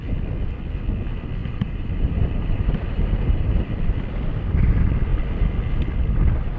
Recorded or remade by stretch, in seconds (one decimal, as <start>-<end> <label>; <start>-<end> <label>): 0.0-1.4 recorded; 1.4-3.7 remade; 3.7-6.6 recorded